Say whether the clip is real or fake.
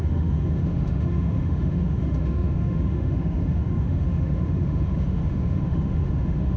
fake